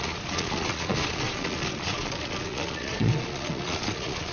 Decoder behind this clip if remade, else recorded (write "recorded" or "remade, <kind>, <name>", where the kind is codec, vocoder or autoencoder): remade, vocoder, Vocos